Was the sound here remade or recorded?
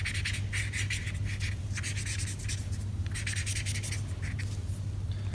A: recorded